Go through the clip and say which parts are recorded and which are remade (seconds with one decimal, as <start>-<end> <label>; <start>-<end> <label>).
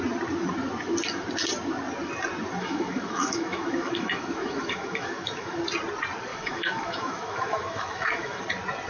0.0-2.6 recorded; 2.6-5.6 remade; 5.6-6.3 recorded; 6.3-8.4 remade; 8.4-8.9 recorded